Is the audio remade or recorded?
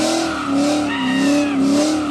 recorded